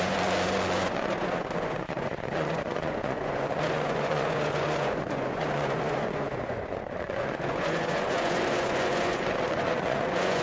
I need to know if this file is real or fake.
fake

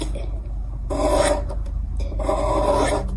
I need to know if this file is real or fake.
real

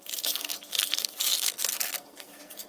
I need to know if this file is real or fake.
fake